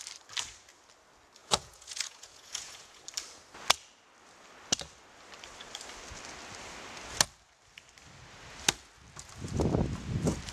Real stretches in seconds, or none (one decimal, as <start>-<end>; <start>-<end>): 0.0-1.4; 3.0-10.5